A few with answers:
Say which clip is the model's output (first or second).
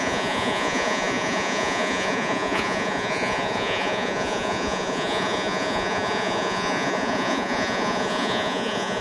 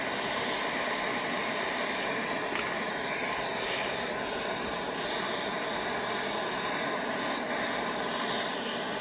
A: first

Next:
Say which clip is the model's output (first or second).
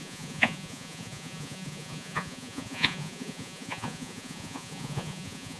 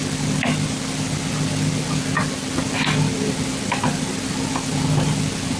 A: first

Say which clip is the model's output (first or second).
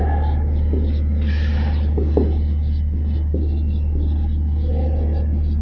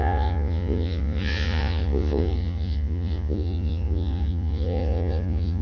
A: second